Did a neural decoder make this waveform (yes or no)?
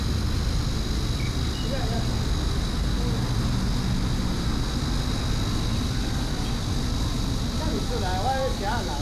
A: no